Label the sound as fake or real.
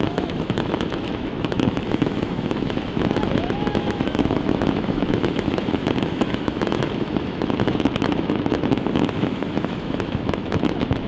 fake